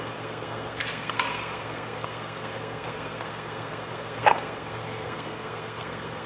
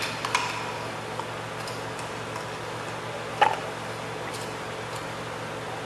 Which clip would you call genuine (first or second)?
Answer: second